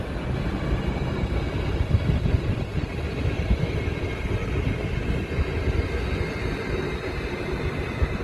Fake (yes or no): no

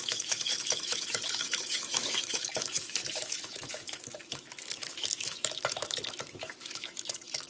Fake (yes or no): yes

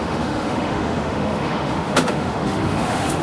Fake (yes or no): yes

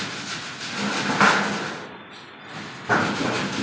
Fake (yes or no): no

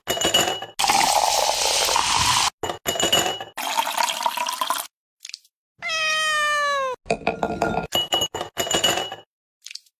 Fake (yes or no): no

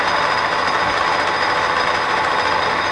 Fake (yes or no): no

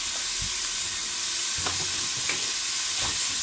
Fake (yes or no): no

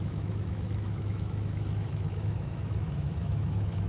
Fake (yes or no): yes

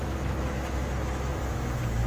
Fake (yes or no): yes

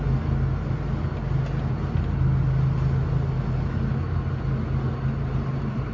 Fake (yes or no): no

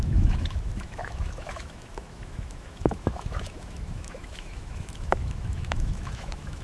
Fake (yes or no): yes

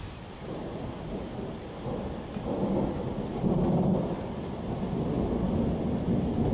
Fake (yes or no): no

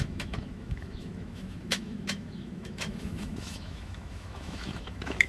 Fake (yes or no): yes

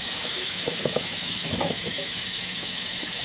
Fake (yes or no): yes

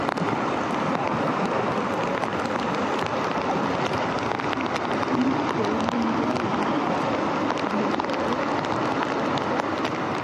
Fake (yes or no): no